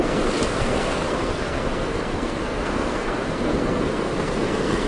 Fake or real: fake